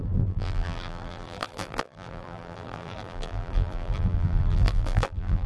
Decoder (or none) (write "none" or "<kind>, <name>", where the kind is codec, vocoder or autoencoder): vocoder, BigVGAN v2